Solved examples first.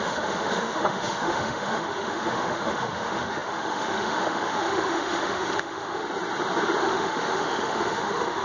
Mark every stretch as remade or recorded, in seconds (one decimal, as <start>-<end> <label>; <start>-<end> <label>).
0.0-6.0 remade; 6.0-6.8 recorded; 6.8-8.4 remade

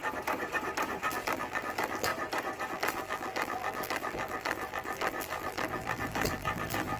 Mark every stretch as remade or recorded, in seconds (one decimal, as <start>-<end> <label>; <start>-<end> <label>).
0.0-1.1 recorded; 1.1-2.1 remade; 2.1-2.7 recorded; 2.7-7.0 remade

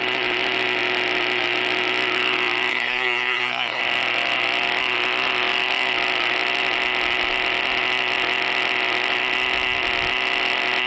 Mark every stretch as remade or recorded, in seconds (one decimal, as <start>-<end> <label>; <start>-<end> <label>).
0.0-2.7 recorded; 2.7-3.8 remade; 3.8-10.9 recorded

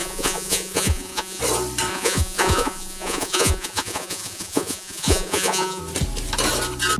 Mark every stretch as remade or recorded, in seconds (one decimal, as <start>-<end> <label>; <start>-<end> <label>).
0.0-1.4 remade; 1.4-1.9 recorded; 1.9-5.8 remade; 5.8-7.0 recorded

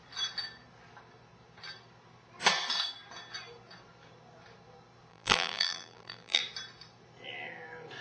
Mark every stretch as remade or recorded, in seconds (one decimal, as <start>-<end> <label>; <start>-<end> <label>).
0.0-5.1 recorded; 5.1-6.4 remade; 6.4-8.0 recorded

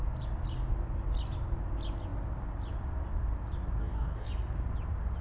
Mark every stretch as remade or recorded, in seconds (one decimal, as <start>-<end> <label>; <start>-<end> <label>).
0.0-3.8 recorded; 3.8-4.3 remade; 4.3-5.2 recorded

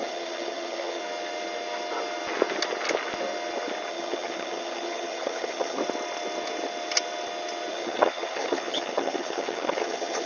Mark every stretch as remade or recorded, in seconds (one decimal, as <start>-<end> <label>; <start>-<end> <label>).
0.0-1.0 remade; 1.0-3.9 recorded; 3.9-5.8 remade; 5.8-7.7 recorded; 7.7-10.3 remade